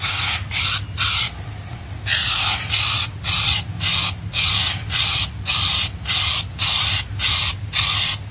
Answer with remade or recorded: recorded